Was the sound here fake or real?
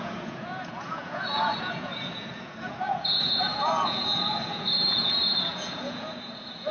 fake